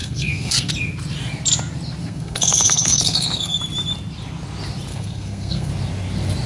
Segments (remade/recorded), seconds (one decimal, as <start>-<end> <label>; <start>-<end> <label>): 0.0-0.7 remade; 0.7-2.0 recorded; 2.0-3.6 remade; 3.6-4.9 recorded; 4.9-5.7 remade; 5.7-6.5 recorded